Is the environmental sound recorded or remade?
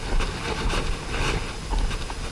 recorded